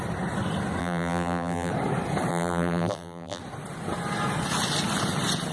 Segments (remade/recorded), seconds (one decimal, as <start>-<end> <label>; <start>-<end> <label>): 0.0-0.8 recorded; 0.8-1.7 remade; 1.7-2.3 recorded; 2.3-3.4 remade; 3.4-5.5 recorded